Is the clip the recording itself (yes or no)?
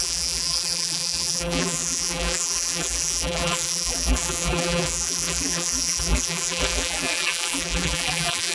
no